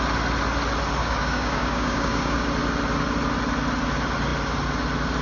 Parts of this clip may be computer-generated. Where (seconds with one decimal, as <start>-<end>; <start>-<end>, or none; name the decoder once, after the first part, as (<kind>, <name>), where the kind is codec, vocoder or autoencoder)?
1.0-2.4 (codec, DAC)